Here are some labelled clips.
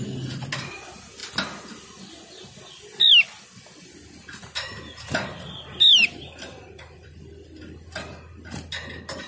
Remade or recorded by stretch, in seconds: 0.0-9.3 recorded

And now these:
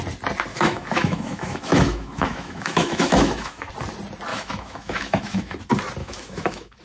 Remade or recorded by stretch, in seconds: 0.0-0.5 recorded; 0.5-3.7 remade; 3.7-4.3 recorded; 4.3-5.6 remade; 5.6-6.0 recorded; 6.0-6.8 remade

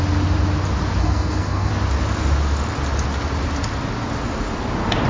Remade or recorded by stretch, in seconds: 0.0-1.0 recorded; 1.0-1.7 remade; 1.7-5.1 recorded